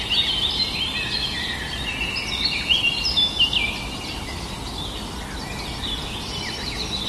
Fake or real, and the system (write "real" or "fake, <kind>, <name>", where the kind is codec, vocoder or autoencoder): real